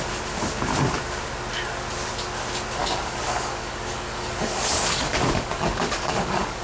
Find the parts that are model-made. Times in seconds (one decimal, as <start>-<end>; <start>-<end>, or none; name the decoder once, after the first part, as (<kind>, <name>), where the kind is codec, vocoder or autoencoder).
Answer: 2.8-6.6 (codec, DAC)